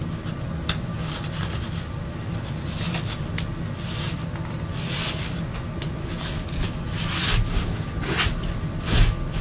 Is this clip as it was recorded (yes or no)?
yes